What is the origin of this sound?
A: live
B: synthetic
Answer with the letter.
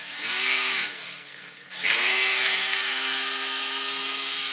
B